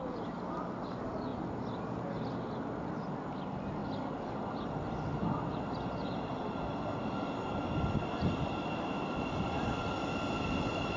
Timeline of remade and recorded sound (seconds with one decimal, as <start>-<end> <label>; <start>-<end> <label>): 0.0-11.0 recorded